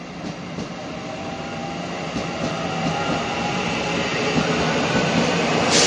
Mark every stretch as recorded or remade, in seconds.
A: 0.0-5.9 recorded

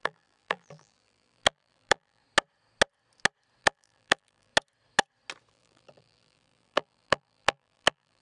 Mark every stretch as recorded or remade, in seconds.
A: 0.0-2.2 remade; 2.2-3.6 recorded; 3.6-4.5 remade; 4.5-5.5 recorded; 5.5-8.2 remade

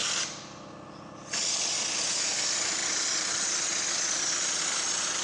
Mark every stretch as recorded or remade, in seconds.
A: 0.0-2.8 remade; 2.8-5.2 recorded